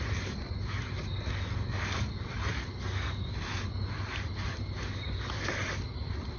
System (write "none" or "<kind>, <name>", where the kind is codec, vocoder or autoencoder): none